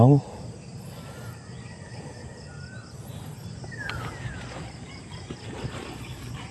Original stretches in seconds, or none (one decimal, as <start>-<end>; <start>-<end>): 0.0-6.5